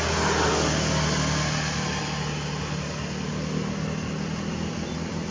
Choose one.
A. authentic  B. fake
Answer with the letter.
A